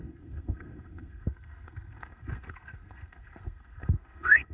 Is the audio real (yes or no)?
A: no